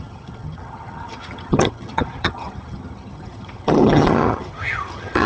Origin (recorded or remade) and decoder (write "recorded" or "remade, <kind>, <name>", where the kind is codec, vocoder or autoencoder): remade, vocoder, HiFi-GAN